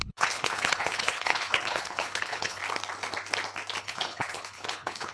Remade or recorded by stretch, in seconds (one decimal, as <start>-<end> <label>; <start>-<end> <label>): 0.0-2.6 remade; 2.6-3.8 recorded; 3.8-5.1 remade